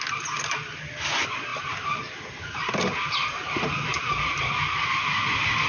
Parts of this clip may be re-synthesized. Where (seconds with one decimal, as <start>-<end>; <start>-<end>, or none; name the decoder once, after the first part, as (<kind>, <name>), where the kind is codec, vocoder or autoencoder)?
1.5-2.7 (vocoder, BigVGAN v2); 3.2-4.2